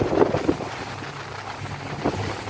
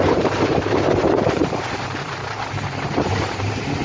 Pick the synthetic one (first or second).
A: second